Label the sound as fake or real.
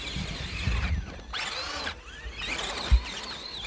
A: real